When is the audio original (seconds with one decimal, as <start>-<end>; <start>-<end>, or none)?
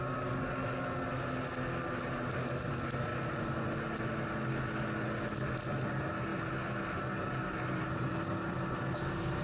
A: 0.0-9.4